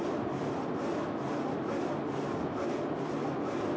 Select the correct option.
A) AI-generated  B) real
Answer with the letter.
B